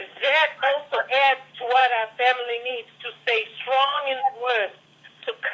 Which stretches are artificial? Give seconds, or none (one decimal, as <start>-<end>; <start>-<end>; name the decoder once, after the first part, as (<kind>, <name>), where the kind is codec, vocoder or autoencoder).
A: 0.0-5.5 (codec, DAC)